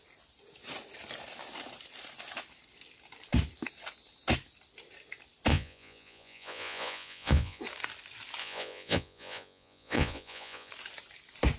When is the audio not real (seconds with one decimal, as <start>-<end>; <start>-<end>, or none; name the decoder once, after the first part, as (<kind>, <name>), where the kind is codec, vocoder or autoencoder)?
5.5-7.6 (vocoder, Vocos); 8.4-10.7